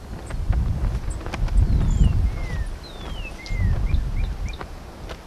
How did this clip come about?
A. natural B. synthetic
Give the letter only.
A